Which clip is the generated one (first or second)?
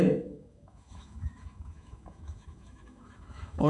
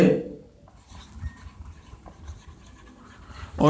first